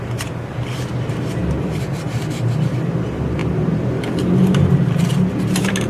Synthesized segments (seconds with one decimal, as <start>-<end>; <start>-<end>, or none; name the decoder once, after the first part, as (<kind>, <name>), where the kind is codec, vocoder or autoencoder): none